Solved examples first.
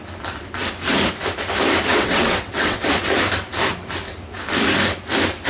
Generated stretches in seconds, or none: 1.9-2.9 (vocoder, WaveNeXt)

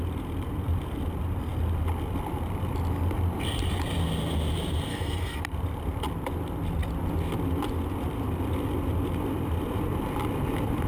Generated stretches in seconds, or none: 4.9-5.4 (codec, SNAC)

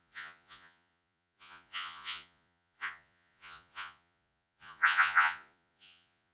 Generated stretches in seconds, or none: 0.0-6.3 (vocoder, Vocos)

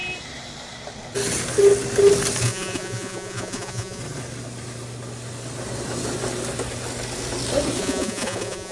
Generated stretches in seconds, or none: 2.4-4.0 (vocoder, Vocos); 7.8-8.7

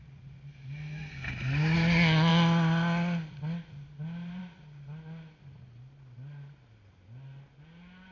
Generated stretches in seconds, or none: none

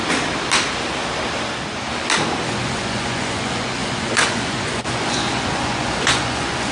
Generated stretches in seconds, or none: 2.5-6.7 (vocoder, Vocos)

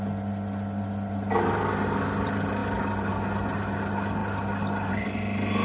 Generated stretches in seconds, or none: none

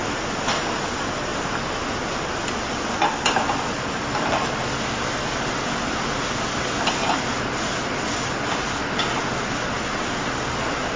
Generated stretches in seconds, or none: 5.8-6.9 (vocoder, BigVGAN v2)